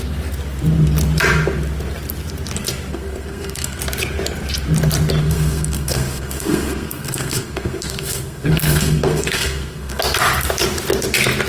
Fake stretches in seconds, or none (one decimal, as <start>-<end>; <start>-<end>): 2.9-3.8; 5.2-10.0